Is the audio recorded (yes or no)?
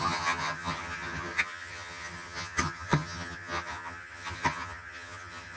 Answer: no